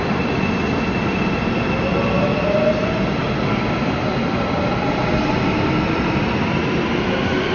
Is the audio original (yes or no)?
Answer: yes